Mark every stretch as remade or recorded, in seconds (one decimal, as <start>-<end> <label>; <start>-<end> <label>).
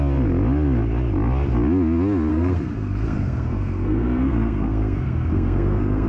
0.0-2.3 recorded; 2.3-6.1 remade